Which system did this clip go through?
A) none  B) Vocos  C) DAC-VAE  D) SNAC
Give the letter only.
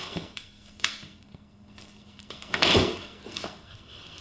D